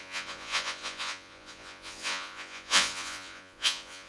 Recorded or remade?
remade